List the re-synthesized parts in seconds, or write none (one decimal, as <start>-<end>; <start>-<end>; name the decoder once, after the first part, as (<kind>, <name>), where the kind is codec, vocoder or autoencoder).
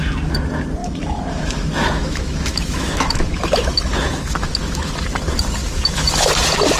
0.8-4.9 (autoencoder, DAC-VAE); 5.6-6.3